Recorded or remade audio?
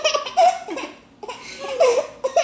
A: recorded